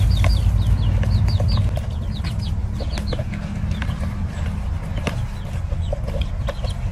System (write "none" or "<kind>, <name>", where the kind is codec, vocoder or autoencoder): none